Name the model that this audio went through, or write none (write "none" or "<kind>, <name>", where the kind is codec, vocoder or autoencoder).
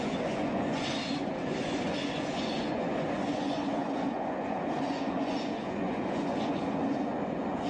vocoder, Vocos